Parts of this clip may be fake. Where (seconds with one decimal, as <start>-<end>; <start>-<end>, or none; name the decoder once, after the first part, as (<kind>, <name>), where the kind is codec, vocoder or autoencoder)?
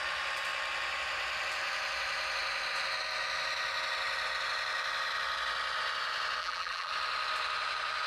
6.4-6.9 (vocoder, BigVGAN v2)